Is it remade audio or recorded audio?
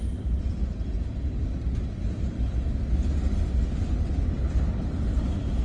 recorded